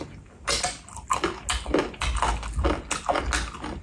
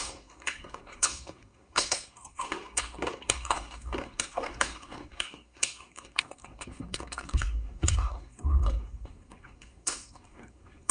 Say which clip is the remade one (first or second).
second